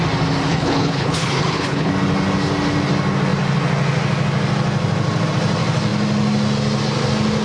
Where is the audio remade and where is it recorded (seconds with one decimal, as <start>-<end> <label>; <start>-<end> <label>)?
0.0-0.5 recorded; 0.5-1.9 remade; 1.9-7.4 recorded